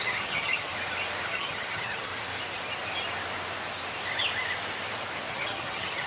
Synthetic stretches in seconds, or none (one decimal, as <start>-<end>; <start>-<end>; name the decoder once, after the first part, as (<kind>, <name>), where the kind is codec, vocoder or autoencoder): 0.0-0.7 (vocoder, HiFi-GAN); 1.3-2.1; 5.3-6.1